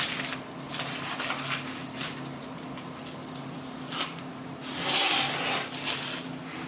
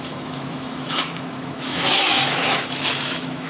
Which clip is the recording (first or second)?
first